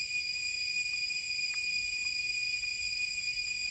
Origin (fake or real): real